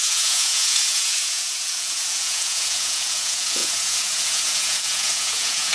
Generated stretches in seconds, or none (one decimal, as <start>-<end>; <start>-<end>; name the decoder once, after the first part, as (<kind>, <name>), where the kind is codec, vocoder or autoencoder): 0.0-5.7 (vocoder, Vocos)